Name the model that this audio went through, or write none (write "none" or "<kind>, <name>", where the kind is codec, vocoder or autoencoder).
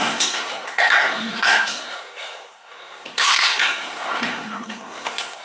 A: codec, SNAC